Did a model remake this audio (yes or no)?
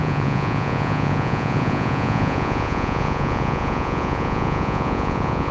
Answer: yes